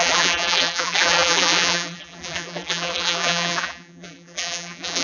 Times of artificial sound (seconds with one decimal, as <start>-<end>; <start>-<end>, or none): 0.0-5.0